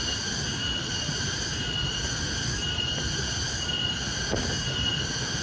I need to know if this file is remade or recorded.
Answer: recorded